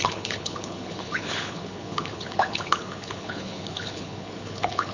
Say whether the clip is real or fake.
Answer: fake